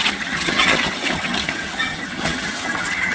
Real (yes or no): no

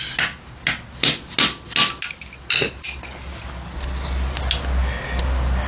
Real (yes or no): yes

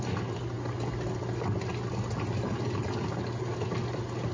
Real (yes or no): yes